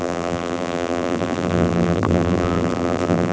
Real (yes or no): no